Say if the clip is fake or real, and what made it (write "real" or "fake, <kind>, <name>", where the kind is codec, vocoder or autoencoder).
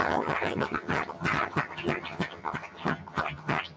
fake, vocoder, HiFi-GAN